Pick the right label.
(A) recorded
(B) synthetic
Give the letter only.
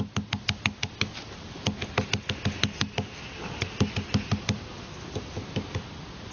A